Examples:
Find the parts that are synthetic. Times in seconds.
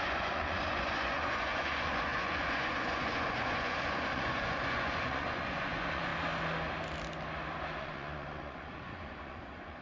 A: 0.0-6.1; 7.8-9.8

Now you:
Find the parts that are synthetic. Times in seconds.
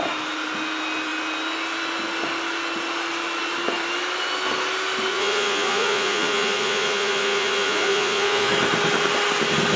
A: 5.1-8.5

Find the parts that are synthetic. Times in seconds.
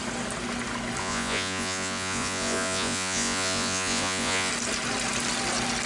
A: 1.0-4.5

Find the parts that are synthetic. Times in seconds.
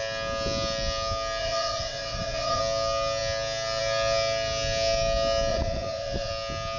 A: 1.4-2.6; 5.5-6.3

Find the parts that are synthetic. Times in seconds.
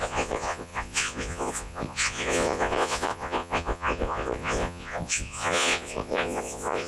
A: 0.0-6.9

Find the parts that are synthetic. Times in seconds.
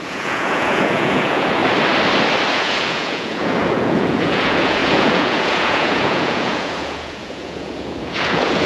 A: 0.0-1.6; 2.5-8.7